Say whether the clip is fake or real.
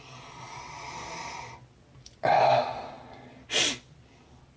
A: real